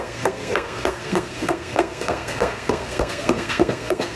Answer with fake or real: fake